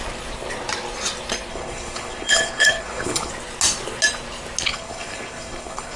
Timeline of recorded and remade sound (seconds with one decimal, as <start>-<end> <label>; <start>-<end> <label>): 0.0-1.5 recorded; 1.5-3.3 remade; 3.3-4.7 recorded; 4.7-6.0 remade